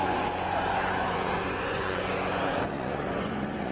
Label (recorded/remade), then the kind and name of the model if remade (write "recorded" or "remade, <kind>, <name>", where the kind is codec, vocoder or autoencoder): remade, vocoder, Vocos